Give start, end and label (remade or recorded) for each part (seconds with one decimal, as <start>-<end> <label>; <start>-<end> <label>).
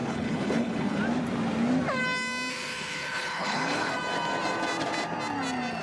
0.0-1.0 remade; 1.0-2.5 recorded; 2.5-3.9 remade; 3.9-5.8 recorded